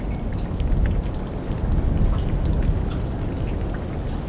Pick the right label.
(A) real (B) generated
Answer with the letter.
A